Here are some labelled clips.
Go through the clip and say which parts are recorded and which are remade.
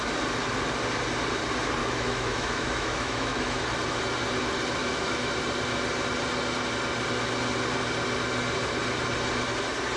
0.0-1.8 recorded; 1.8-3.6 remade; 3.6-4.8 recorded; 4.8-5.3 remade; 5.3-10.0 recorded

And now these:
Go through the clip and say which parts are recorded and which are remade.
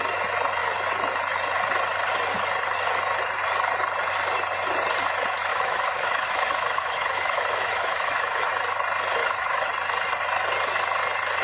0.0-5.5 recorded; 5.5-8.5 remade; 8.5-9.2 recorded; 9.2-9.7 remade; 9.7-11.4 recorded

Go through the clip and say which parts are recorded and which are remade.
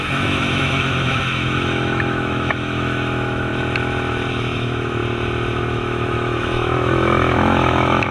0.0-3.5 remade; 3.5-4.3 recorded; 4.3-5.0 remade; 5.0-5.6 recorded; 5.6-8.1 remade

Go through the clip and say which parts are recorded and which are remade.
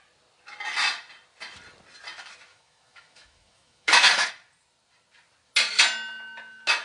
0.0-2.5 recorded; 2.5-4.3 remade; 4.3-6.8 recorded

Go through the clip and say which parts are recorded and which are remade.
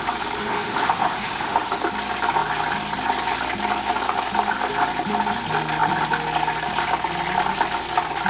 0.0-0.4 recorded; 0.4-1.8 remade; 1.8-8.3 recorded